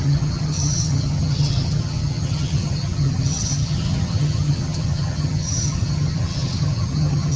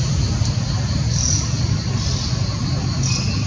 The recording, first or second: second